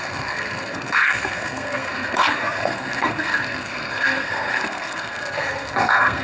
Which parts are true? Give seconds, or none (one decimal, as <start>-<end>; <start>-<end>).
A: none